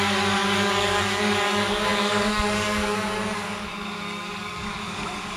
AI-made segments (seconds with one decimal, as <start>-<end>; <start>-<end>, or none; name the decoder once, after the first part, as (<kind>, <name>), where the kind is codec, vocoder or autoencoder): 0.0-5.4 (codec, DAC)